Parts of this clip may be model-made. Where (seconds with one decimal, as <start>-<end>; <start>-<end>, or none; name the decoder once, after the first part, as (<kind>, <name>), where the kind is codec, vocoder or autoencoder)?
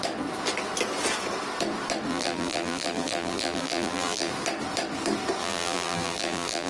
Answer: 2.1-4.3 (vocoder, BigVGAN v2); 5.4-6.7